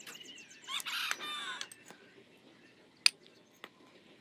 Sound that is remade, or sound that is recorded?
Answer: recorded